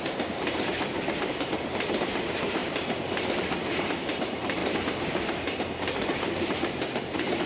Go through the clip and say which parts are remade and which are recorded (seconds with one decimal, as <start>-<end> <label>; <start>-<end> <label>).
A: 0.0-7.5 remade